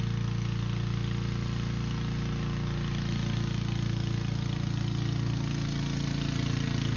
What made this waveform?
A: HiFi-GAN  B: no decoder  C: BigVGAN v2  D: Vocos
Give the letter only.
B